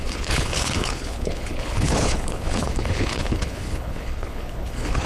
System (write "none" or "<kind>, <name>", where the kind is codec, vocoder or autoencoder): codec, HILCodec